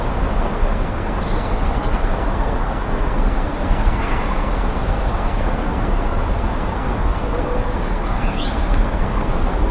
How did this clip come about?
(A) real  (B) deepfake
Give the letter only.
B